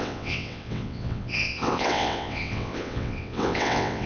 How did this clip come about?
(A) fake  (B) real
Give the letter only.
A